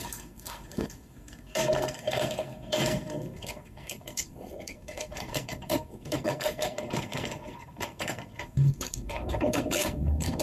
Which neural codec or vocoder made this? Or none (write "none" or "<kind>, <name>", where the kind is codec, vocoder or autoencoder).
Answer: codec, SNAC